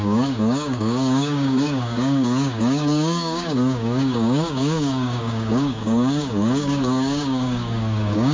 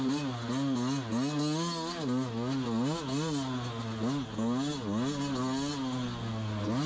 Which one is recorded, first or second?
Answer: second